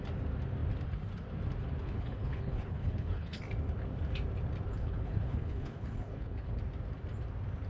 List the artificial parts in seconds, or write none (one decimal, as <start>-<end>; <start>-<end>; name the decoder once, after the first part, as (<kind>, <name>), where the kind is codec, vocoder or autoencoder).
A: 1.8-3.4 (codec, HILCodec); 4.7-6.6